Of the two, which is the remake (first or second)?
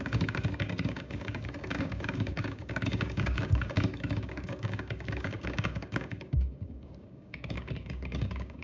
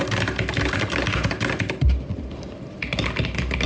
first